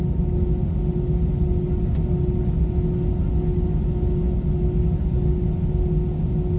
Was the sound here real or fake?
real